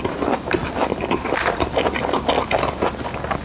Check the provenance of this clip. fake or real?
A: real